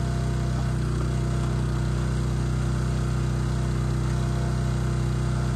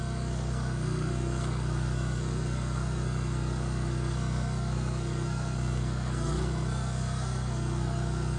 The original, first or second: first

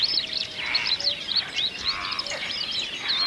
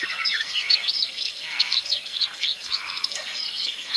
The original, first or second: first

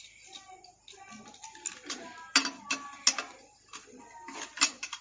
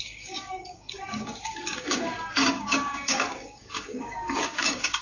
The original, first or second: first